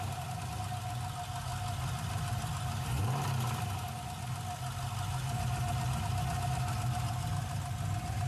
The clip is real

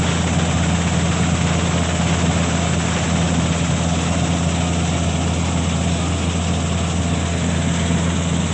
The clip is real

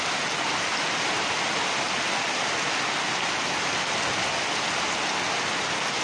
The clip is real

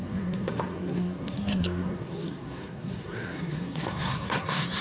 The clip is fake